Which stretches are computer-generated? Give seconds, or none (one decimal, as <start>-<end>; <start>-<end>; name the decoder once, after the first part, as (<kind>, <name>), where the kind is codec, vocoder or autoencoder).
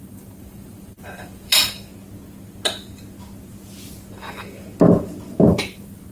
0.0-1.9 (vocoder, BigVGAN v2); 5.6-6.1